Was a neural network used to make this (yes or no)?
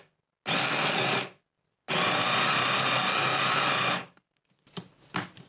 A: no